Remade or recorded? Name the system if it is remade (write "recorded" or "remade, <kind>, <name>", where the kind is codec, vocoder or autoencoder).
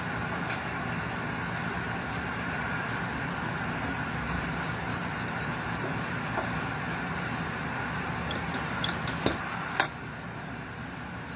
recorded